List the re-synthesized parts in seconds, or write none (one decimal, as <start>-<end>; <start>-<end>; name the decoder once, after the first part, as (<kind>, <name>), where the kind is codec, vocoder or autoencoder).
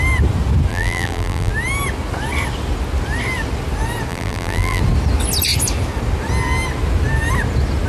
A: 0.7-1.5 (vocoder, BigVGAN v2); 4.1-4.8